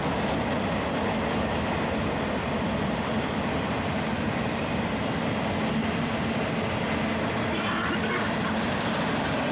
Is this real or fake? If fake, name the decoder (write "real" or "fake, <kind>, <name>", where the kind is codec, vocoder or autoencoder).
real